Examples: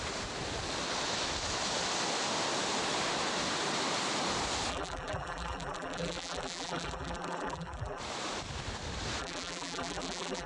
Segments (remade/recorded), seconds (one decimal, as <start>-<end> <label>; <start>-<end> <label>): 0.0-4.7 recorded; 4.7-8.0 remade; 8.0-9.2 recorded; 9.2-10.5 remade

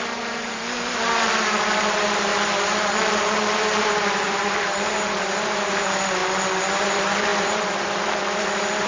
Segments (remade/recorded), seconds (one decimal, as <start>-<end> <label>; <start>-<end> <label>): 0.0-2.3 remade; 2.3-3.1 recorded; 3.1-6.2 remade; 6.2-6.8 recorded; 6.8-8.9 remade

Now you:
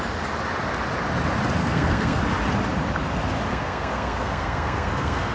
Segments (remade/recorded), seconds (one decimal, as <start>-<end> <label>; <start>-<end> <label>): 0.0-1.6 recorded; 1.6-2.2 remade; 2.2-3.5 recorded; 3.5-5.3 remade

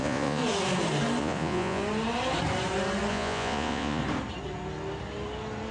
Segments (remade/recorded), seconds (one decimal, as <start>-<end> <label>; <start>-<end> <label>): 0.0-0.4 remade; 0.4-1.2 recorded; 1.2-1.8 remade; 1.8-3.1 recorded; 3.1-4.0 remade; 4.0-5.7 recorded

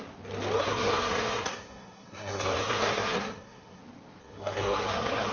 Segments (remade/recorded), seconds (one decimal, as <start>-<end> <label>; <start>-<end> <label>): 0.0-0.6 recorded; 0.6-3.8 remade; 3.8-4.2 recorded; 4.2-5.3 remade